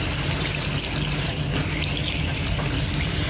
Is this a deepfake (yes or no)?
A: no